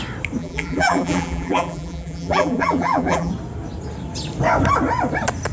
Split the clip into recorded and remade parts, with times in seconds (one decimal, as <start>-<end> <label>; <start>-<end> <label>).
0.0-0.4 recorded; 0.4-3.3 remade; 3.3-5.5 recorded